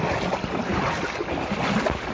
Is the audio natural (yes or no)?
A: yes